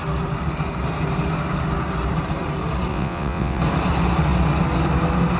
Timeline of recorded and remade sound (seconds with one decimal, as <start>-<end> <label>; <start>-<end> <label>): 0.0-2.9 recorded; 2.9-3.6 remade; 3.6-5.4 recorded